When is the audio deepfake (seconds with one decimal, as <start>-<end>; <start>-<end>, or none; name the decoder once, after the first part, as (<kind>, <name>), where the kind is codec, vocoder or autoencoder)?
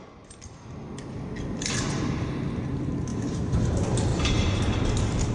3.1-3.6 (vocoder, BigVGAN v2); 4.1-5.3